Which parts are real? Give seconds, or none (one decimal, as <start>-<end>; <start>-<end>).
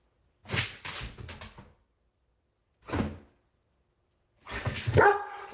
0.0-5.5